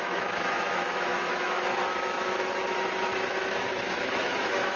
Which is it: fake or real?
fake